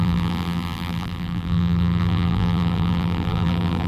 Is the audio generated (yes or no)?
yes